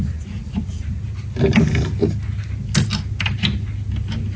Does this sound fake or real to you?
real